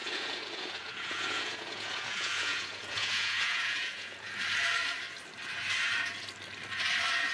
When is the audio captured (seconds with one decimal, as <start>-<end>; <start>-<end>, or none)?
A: 4.4-7.3